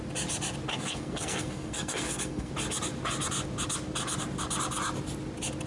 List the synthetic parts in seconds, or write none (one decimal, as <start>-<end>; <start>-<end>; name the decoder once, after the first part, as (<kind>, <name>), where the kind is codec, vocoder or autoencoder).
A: 0.7-2.5 (codec, SNAC)